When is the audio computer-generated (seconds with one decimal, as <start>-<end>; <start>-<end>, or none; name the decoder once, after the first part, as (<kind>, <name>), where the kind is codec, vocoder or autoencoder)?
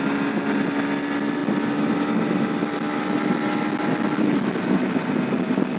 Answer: none